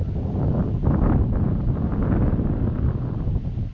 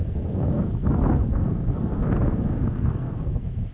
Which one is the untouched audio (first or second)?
first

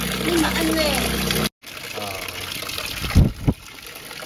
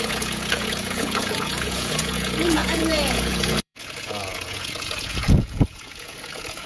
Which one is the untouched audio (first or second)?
first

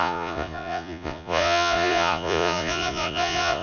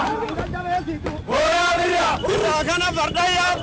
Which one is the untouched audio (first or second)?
second